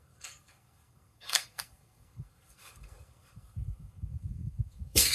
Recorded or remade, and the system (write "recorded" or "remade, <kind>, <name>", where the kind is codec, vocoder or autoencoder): remade, codec, SNAC